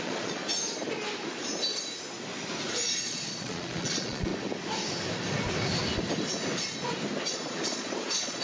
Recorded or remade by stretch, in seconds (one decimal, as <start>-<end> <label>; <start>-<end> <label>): 0.0-0.4 remade; 0.4-3.0 recorded; 3.0-4.3 remade; 4.3-7.3 recorded; 7.3-8.4 remade